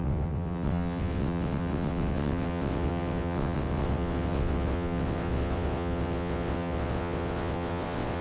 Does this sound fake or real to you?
fake